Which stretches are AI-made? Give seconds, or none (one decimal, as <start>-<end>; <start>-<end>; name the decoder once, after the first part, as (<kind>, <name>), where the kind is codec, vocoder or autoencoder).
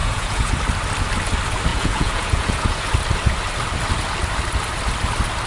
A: 0.0-0.5 (vocoder, Vocos); 1.7-2.9